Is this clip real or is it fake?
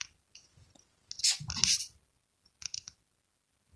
real